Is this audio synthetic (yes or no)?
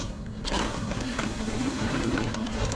yes